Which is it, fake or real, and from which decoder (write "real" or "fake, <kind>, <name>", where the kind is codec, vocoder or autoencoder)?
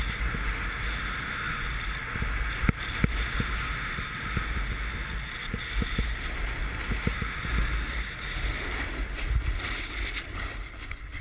real